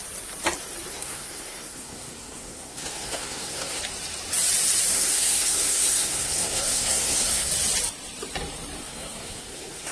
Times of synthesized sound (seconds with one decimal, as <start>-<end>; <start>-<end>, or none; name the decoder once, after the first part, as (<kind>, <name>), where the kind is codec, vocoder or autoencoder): 0.9-3.8 (codec, SNAC); 4.9-7.5; 8.8-9.9